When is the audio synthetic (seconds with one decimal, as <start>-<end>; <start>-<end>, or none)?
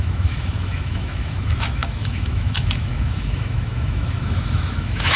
0.0-5.2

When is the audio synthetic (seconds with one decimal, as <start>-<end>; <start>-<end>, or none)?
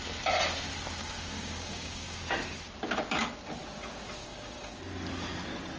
1.0-2.2; 4.2-4.8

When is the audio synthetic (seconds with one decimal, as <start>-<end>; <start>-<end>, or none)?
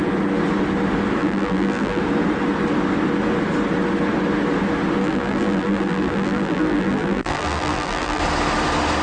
1.2-2.0; 5.0-8.2